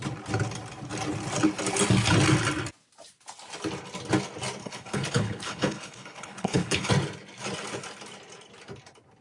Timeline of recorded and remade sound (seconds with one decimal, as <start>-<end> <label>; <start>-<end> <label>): 0.0-4.6 recorded; 4.6-6.9 remade; 6.9-9.2 recorded